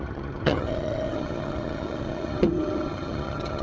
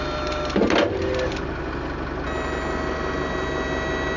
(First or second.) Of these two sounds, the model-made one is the first